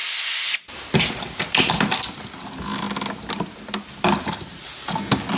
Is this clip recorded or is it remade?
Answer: recorded